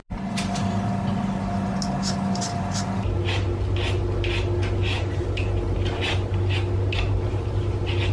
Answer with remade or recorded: recorded